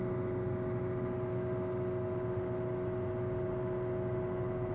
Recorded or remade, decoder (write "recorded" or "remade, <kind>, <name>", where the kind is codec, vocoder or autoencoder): recorded